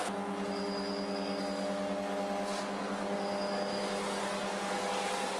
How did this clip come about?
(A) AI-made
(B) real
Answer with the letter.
B